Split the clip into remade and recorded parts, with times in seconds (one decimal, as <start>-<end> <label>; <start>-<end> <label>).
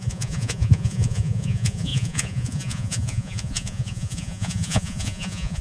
0.0-5.6 remade